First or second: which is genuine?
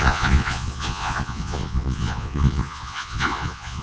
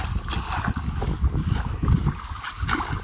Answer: second